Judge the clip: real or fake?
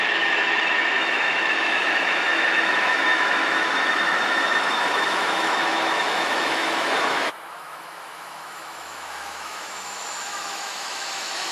fake